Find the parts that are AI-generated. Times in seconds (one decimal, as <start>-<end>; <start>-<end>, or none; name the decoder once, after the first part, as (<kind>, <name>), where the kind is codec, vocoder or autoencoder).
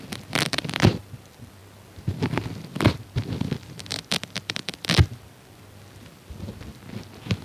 0.0-1.6 (vocoder, BigVGAN v2); 2.6-7.4